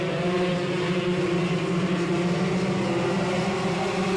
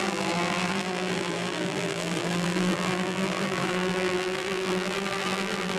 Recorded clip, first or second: first